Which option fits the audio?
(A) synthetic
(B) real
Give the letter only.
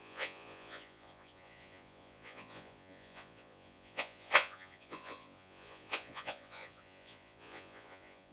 A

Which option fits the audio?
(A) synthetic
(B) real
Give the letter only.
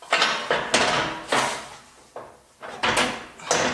B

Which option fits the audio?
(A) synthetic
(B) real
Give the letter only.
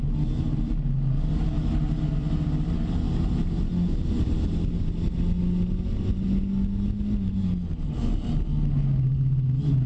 B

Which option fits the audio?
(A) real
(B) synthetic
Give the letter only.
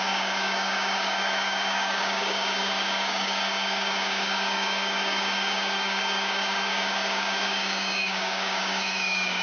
B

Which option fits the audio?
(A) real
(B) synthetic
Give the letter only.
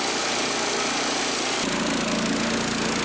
A